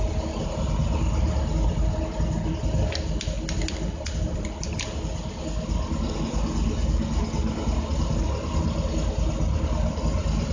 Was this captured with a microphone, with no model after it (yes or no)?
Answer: yes